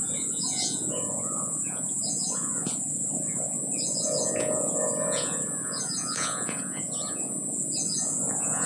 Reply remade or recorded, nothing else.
remade